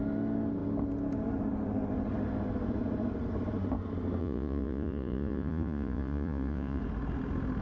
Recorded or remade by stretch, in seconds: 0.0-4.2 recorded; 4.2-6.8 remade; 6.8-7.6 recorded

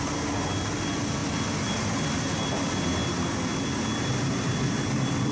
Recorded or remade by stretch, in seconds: 0.0-5.3 recorded

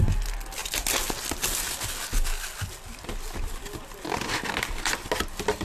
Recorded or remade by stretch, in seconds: 0.0-5.6 recorded

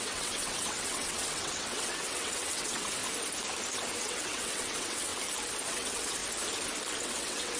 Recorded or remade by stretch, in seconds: 0.0-3.0 remade; 3.0-4.0 recorded; 4.0-5.1 remade; 5.1-5.7 recorded; 5.7-6.2 remade; 6.2-7.0 recorded; 7.0-7.6 remade

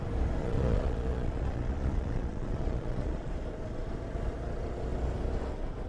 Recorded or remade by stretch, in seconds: 0.0-0.4 recorded; 0.4-3.3 remade; 3.3-5.9 recorded

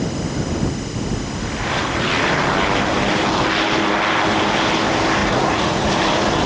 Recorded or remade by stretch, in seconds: 0.0-5.2 recorded; 5.2-5.9 remade; 5.9-6.5 recorded

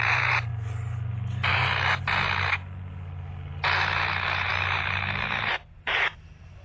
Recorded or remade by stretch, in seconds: 0.0-0.5 remade; 0.5-4.5 recorded; 4.5-6.6 remade

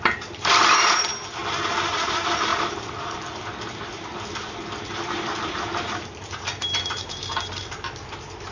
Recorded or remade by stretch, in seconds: 0.0-1.1 remade; 1.1-1.9 recorded; 1.9-8.5 remade